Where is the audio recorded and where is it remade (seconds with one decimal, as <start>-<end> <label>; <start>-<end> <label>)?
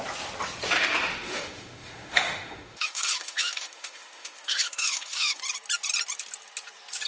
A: 0.0-1.1 recorded; 1.1-5.4 remade; 5.4-7.1 recorded